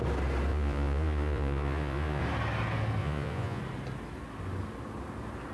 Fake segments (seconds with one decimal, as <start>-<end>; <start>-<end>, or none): 0.5-2.2; 3.0-3.6